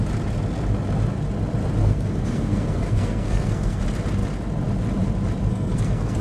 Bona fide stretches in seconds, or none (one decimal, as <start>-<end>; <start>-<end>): 0.0-1.8; 3.8-5.5